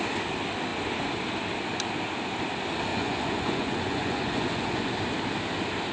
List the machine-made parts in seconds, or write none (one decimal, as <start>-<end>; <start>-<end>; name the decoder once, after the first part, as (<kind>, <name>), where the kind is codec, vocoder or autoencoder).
2.9-4.9 (vocoder, Vocos)